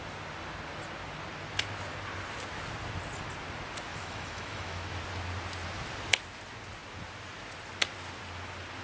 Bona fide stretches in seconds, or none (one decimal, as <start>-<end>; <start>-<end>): 0.0-3.9; 5.0-8.8